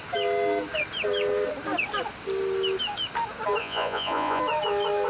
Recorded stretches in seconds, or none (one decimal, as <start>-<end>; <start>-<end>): 0.0-3.6; 4.4-5.1